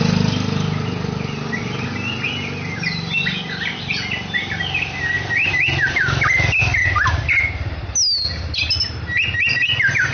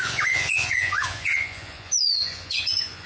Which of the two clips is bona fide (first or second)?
first